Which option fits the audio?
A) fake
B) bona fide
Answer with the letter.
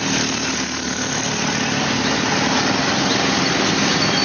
B